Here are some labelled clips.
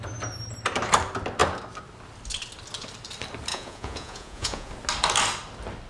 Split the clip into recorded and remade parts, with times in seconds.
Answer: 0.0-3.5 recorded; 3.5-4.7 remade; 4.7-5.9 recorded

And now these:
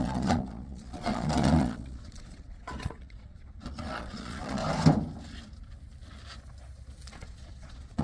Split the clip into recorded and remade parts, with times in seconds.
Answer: 0.0-4.6 remade; 4.6-7.1 recorded; 7.1-8.0 remade